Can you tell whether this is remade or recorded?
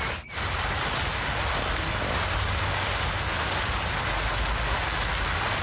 recorded